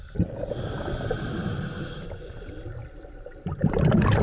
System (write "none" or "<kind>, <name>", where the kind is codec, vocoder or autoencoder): none